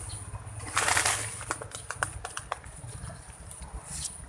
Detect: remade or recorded recorded